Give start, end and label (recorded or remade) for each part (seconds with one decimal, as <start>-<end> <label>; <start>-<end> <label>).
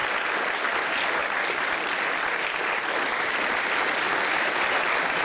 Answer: 0.0-5.2 recorded